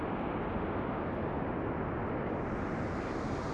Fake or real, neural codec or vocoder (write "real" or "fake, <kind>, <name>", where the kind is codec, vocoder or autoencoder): real